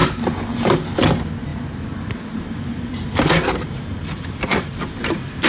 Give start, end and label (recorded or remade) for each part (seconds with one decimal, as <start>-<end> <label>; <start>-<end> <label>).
0.0-1.0 remade; 1.0-1.5 recorded; 1.5-4.8 remade; 4.8-5.5 recorded